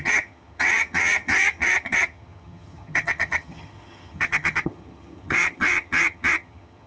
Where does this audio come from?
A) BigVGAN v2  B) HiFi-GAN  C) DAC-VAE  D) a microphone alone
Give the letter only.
B